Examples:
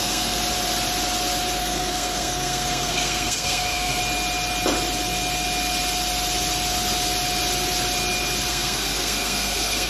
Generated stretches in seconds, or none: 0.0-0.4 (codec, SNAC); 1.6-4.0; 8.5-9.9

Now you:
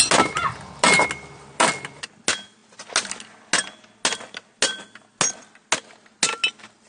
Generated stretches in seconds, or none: none

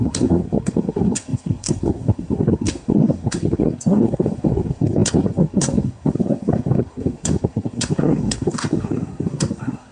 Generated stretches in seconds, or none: 0.0-9.9 (codec, SNAC)

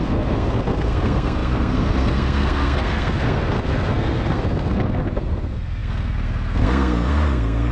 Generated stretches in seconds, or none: 0.0-7.7 (codec, SNAC)

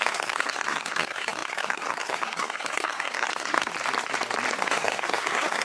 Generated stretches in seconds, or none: 0.0-3.7 (codec, SNAC); 4.6-5.6

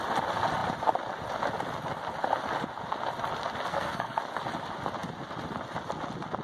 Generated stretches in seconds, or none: 3.7-4.2 (codec, SNAC)

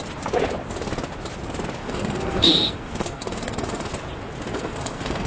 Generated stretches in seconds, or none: 1.8-3.9 (codec, SNAC); 4.5-5.3

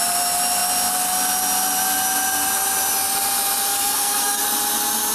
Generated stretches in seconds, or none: 3.7-4.4 (codec, SNAC)